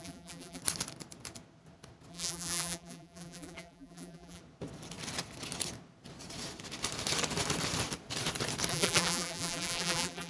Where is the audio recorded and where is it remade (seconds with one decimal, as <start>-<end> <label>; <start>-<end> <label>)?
0.0-0.6 remade; 0.6-2.1 recorded; 2.1-4.4 remade; 4.4-8.7 recorded; 8.7-10.3 remade